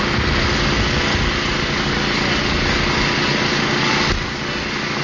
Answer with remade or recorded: recorded